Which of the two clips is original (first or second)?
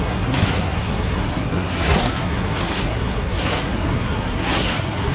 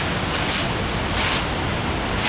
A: second